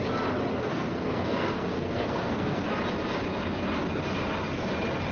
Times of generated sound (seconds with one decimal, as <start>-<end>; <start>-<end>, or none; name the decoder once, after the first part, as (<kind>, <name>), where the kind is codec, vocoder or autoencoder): 0.5-2.7 (codec, SNAC)

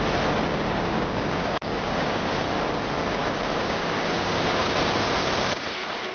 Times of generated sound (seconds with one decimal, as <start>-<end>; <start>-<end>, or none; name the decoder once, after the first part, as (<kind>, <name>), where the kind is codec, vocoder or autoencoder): 0.5-2.3 (codec, DAC); 3.2-4.7